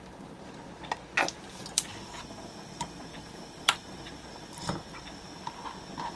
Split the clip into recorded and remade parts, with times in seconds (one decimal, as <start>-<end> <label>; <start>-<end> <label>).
0.0-1.6 recorded; 1.6-5.3 remade; 5.3-6.2 recorded